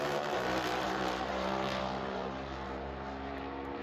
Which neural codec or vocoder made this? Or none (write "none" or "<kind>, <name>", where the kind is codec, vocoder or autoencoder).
vocoder, BigVGAN v2